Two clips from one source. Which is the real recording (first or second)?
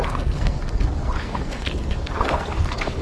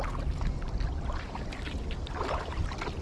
second